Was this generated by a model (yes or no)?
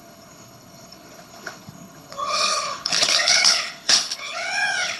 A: yes